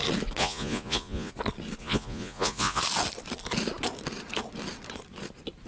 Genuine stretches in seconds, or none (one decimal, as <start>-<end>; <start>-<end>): 0.0-0.4; 1.3-1.8; 2.8-5.7